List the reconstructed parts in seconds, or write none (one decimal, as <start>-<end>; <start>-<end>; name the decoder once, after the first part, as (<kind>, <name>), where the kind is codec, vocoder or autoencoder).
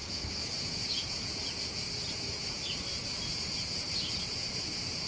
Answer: 0.0-5.1 (vocoder, Vocos)